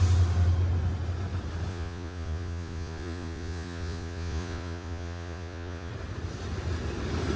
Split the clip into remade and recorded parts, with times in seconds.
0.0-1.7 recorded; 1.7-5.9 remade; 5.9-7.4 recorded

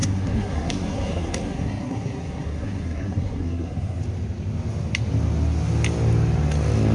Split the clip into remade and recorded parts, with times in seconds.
0.0-4.0 remade; 4.0-6.9 recorded

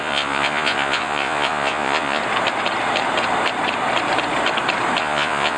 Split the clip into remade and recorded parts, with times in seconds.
0.0-2.2 remade; 2.2-5.0 recorded; 5.0-5.6 remade